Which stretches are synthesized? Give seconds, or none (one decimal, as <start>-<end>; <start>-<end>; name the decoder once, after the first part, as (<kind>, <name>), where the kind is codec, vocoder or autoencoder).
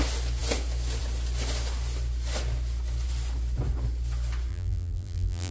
4.5-5.5 (vocoder, BigVGAN v2)